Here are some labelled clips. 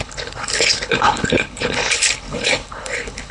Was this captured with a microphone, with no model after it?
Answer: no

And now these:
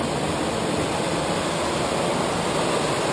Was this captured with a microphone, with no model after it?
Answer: yes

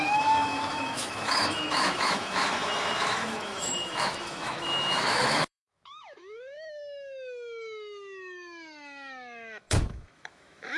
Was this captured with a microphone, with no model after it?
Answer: no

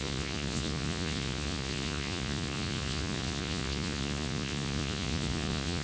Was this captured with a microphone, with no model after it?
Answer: no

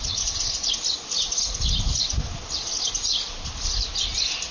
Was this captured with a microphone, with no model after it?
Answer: yes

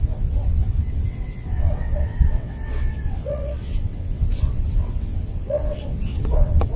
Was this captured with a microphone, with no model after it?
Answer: no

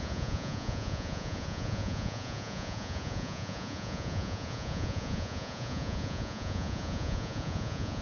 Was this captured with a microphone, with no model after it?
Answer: no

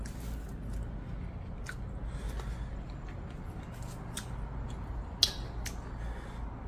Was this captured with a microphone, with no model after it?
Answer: yes